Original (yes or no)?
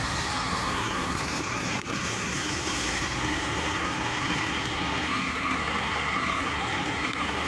no